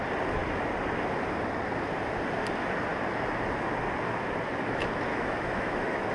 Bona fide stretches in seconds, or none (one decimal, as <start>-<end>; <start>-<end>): 0.0-5.1

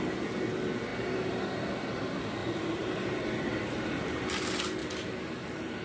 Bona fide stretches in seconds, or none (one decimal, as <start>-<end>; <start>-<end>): 0.0-2.4; 3.1-4.8

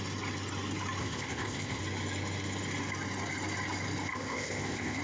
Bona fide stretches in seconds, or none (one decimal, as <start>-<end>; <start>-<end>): 0.0-1.0; 1.8-4.1

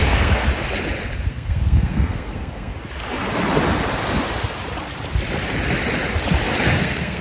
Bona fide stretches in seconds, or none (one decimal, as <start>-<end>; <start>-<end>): 0.5-1.3; 2.7-6.8

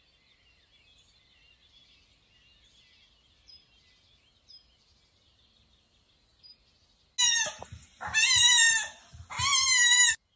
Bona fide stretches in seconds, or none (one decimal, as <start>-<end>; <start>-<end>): 0.0-10.4

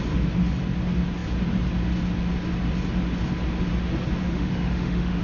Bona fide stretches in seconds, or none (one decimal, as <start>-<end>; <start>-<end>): 0.0-4.2